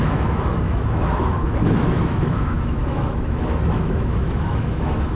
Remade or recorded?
remade